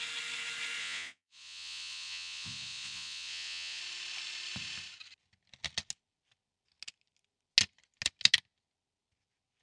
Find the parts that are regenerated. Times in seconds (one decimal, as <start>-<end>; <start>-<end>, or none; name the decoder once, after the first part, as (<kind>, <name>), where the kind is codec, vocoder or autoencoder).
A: 0.8-3.8 (vocoder, Vocos)